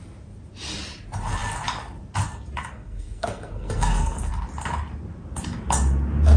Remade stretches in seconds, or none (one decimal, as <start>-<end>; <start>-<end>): 2.6-4.3